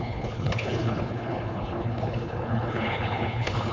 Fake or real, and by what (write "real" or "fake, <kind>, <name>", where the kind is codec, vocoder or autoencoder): fake, codec, HILCodec